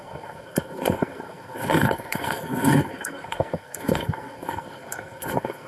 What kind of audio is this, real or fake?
fake